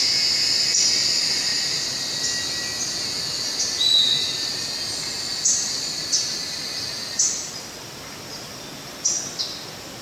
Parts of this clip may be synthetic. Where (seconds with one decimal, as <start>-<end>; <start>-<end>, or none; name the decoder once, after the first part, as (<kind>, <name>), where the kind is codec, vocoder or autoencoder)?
1.5-2.4 (vocoder, BigVGAN v2)